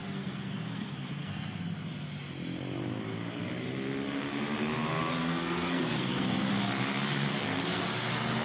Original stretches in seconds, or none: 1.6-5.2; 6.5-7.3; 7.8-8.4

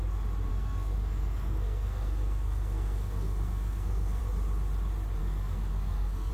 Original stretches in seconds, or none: 0.0-0.5; 4.2-5.2

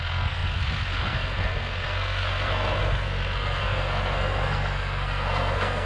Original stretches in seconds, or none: none

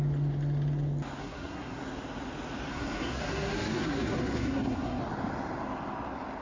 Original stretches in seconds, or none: 0.0-1.2; 1.8-2.7; 5.0-6.4

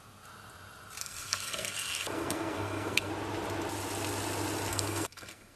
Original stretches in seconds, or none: 0.0-1.0; 3.1-4.7